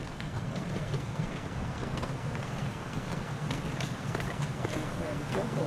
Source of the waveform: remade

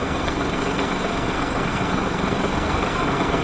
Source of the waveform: remade